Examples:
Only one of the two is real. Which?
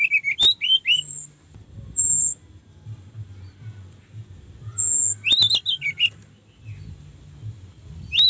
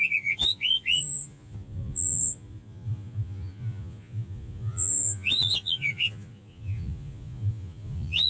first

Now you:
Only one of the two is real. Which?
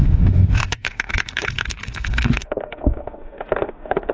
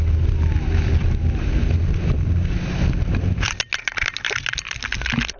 second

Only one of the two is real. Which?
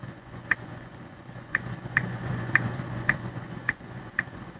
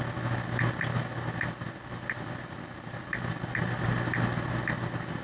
second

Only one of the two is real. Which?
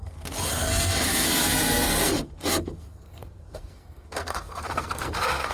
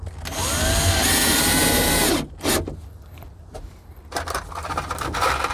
second